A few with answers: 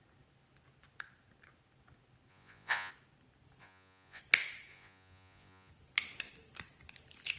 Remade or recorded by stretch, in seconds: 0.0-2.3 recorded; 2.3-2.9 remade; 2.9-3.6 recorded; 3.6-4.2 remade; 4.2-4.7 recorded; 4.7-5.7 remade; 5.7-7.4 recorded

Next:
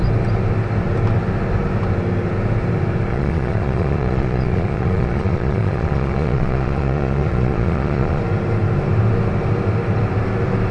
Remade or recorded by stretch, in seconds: 0.0-3.1 recorded; 3.1-8.2 remade; 8.2-10.7 recorded